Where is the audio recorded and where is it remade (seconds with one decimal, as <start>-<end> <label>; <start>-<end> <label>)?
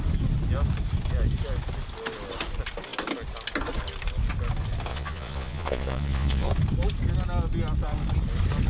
0.0-4.9 recorded; 4.9-6.5 remade; 6.5-8.7 recorded